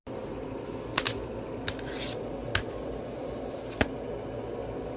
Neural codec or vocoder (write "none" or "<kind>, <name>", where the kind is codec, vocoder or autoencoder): none